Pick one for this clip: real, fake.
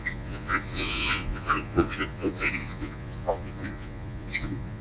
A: fake